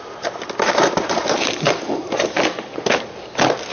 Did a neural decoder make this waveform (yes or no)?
no